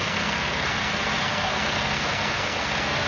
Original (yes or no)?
no